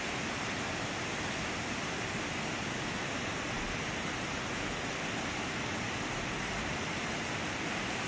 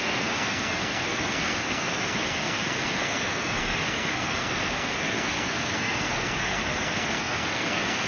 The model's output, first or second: second